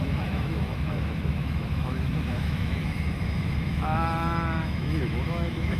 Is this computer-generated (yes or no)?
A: yes